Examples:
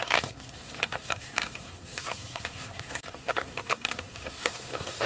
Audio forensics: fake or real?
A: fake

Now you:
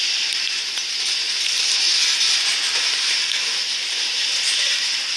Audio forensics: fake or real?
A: real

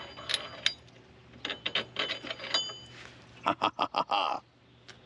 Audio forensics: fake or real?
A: real